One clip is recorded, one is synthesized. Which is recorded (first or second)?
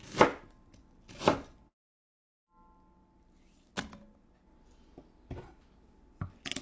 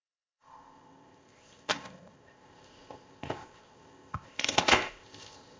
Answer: first